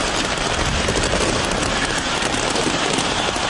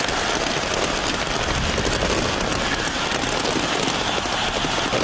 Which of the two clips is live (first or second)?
second